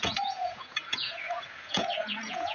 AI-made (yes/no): yes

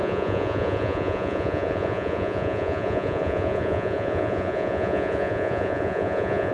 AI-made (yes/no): yes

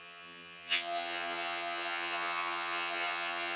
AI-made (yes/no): yes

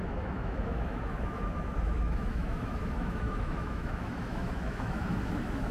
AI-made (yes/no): yes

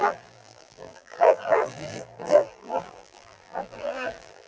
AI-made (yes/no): yes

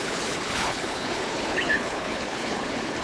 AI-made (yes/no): yes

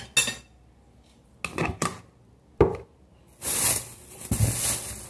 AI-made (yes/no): no